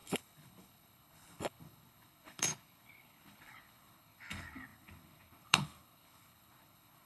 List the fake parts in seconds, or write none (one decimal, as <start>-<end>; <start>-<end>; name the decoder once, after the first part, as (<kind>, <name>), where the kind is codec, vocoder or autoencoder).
0.0-7.1 (codec, HILCodec)